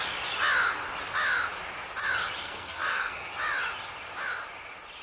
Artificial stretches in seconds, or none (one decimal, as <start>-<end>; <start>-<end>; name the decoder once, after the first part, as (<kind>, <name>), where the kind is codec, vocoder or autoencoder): 2.4-3.3 (codec, SNAC)